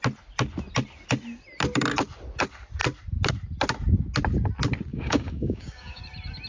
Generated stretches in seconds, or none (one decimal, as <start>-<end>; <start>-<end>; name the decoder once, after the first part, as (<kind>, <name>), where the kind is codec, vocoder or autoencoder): 4.9-6.0 (codec, DAC)